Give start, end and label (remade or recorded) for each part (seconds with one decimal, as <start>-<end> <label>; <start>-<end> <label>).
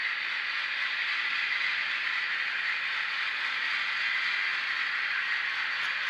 0.0-3.7 remade; 3.7-4.5 recorded; 4.5-5.4 remade; 5.4-6.1 recorded